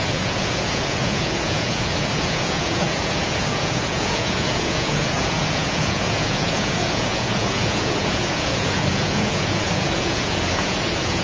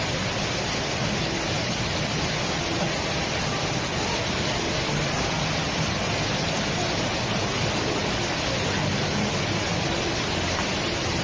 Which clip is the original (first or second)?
second